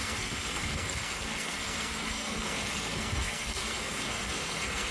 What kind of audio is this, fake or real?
fake